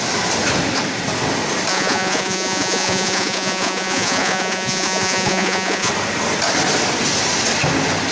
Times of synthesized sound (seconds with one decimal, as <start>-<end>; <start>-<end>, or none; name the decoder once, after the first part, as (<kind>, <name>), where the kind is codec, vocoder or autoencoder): 1.7-5.9 (vocoder, Vocos)